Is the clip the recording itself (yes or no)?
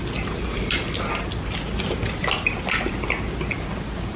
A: yes